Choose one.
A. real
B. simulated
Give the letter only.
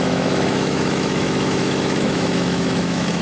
B